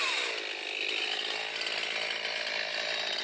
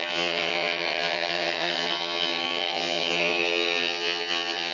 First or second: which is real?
first